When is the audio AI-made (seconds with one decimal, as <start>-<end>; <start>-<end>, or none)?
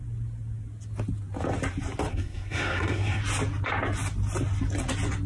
2.1-3.2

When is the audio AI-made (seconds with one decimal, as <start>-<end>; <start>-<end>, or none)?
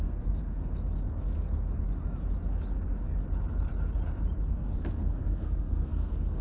0.0-0.7; 4.5-6.4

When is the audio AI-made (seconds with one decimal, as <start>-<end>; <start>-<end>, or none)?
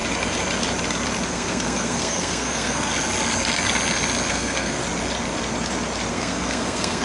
1.3-2.9; 4.3-4.8; 6.1-7.0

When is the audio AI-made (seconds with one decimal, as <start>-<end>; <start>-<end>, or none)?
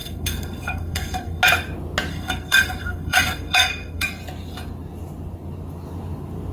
0.0-1.4; 2.1-4.2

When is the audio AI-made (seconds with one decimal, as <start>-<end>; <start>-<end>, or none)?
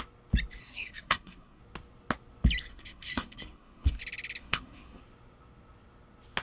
0.6-1.6; 2.7-4.0; 4.4-5.0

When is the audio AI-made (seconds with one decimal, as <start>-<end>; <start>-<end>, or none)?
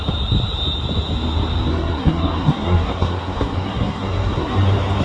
1.7-4.5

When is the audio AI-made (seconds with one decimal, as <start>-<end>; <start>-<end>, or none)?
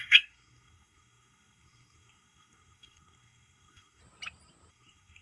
0.0-4.0; 4.7-5.2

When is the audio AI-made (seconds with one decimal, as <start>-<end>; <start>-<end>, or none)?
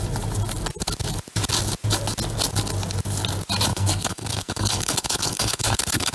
3.7-6.1